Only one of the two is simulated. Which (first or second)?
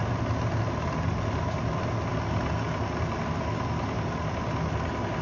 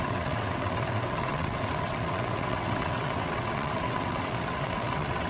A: second